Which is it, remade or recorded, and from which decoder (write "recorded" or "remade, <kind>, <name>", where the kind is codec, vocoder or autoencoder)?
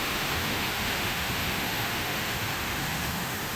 remade, autoencoder, DAC-VAE